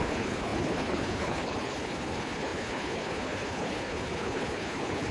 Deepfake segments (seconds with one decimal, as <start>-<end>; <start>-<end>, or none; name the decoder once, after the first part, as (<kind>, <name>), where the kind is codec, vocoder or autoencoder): 0.0-5.1 (codec, HILCodec)